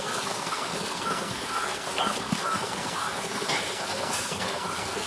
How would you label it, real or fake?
fake